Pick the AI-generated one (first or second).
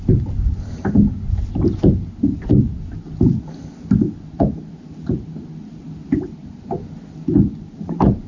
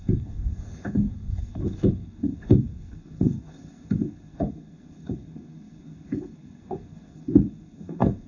second